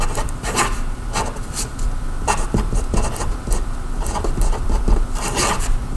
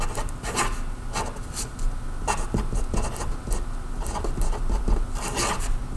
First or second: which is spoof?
first